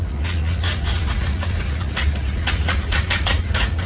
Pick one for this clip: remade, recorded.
remade